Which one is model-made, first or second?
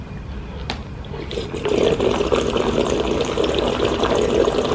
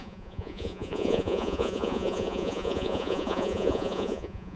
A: second